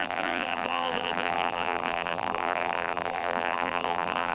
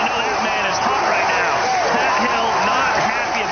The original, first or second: second